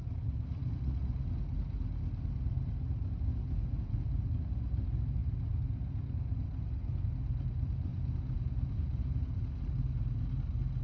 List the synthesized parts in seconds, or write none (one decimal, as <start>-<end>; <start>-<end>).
3.3-4.2; 7.9-9.6